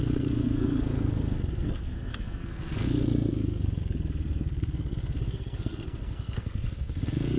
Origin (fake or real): fake